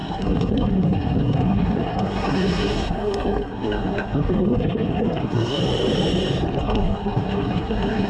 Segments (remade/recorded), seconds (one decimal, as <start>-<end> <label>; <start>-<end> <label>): 0.0-5.6 remade; 5.6-6.6 recorded; 6.6-8.1 remade